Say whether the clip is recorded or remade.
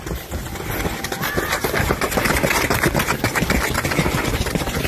recorded